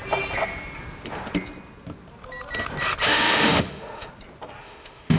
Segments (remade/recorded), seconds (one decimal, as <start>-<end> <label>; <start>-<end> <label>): 0.0-3.1 recorded; 3.1-4.1 remade; 4.1-4.6 recorded; 4.6-5.2 remade